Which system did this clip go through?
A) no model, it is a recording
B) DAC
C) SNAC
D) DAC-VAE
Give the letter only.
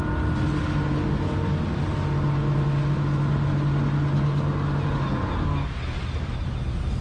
A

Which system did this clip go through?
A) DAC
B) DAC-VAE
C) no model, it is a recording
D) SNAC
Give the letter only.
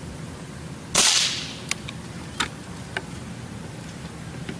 C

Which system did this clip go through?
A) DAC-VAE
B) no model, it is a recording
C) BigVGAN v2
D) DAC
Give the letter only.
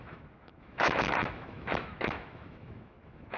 A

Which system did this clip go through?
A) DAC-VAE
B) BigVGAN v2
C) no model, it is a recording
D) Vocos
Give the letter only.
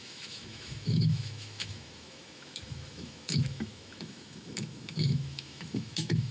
A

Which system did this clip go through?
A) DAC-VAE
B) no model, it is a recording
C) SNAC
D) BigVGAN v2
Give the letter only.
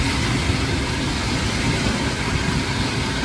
B